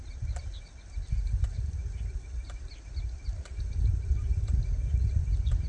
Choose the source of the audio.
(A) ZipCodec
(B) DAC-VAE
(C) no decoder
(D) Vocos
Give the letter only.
C